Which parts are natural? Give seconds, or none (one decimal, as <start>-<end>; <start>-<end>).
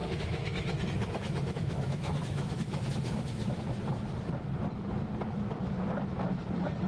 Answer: 3.6-6.9